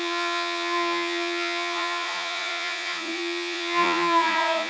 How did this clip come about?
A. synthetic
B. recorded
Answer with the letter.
A